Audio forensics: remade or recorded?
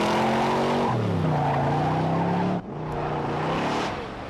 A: recorded